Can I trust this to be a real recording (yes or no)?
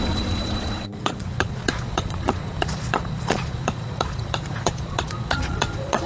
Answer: no